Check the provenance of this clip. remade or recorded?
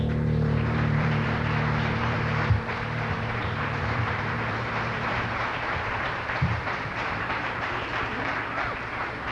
remade